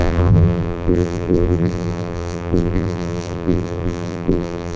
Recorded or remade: remade